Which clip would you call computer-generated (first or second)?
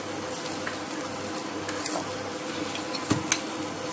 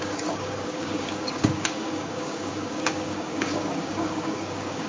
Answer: second